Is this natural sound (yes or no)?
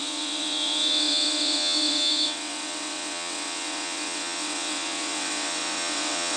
no